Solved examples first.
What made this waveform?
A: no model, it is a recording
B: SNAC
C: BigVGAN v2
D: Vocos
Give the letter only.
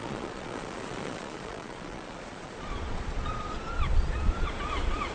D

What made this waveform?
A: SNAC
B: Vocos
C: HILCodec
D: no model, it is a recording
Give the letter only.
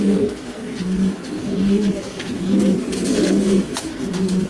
A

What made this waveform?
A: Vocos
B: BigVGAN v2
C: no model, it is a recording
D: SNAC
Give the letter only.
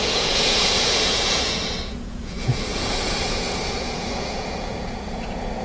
A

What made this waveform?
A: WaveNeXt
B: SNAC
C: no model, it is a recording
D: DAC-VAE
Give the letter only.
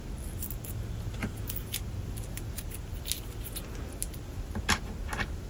C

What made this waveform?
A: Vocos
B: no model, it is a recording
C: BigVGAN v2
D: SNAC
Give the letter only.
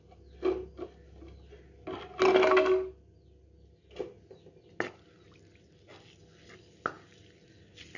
B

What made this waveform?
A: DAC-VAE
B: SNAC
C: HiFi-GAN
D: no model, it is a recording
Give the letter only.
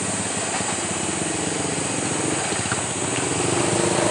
D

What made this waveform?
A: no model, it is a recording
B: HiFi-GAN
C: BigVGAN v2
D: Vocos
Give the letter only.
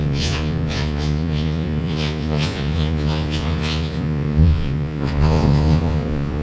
D